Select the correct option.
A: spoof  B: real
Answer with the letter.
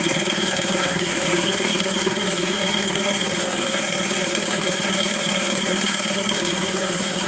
A